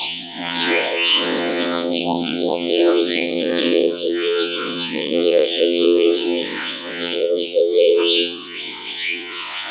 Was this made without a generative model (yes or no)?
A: no